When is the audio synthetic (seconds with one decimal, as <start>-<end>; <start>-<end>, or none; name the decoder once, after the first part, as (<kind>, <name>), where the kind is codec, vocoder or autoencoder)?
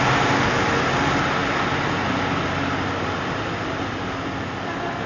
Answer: none